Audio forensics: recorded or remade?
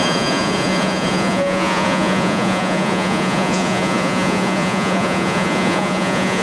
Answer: remade